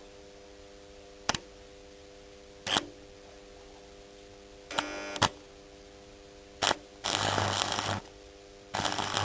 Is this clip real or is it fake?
real